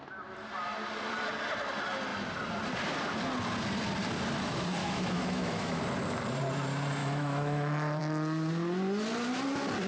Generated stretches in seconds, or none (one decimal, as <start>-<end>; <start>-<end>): 4.8-5.8; 7.0-8.0